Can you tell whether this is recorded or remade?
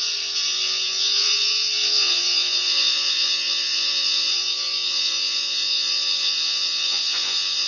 remade